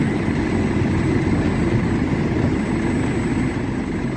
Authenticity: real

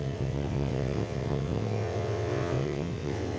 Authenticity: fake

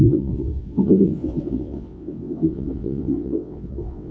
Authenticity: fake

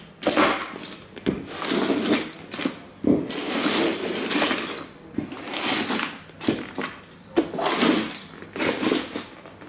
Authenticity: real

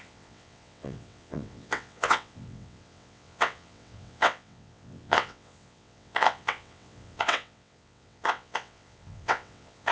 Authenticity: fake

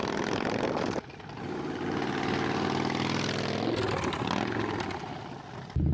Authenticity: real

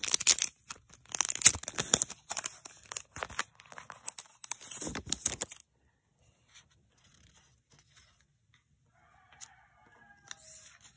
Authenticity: real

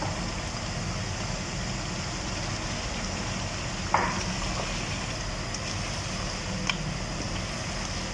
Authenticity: real